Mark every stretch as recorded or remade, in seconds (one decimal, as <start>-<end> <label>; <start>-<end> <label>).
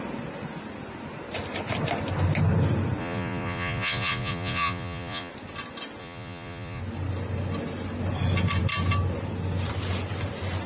0.0-3.0 recorded; 3.0-5.3 remade; 5.3-6.0 recorded; 6.0-6.8 remade; 6.8-10.7 recorded